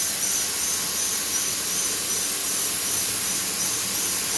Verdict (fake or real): real